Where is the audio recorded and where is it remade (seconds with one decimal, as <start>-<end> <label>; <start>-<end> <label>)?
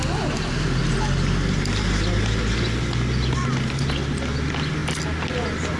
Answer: 0.0-5.8 recorded